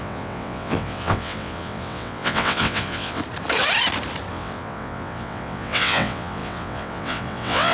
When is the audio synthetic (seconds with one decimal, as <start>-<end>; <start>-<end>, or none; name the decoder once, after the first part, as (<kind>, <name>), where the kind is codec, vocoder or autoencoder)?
0.0-3.2 (vocoder, WaveNeXt); 4.3-7.7